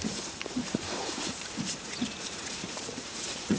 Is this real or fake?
fake